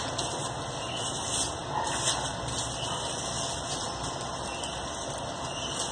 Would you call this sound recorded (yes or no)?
yes